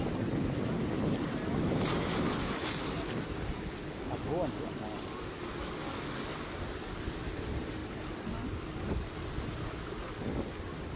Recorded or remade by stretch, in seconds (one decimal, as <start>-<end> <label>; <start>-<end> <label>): 0.0-11.0 recorded